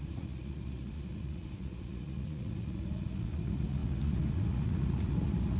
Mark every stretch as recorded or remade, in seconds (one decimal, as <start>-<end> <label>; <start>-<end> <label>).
0.0-5.6 remade